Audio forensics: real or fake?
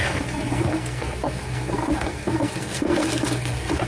fake